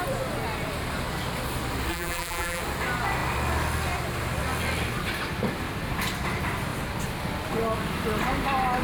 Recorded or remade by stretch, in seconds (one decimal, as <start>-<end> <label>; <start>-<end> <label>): 0.0-1.9 recorded; 1.9-2.6 remade; 2.6-8.8 recorded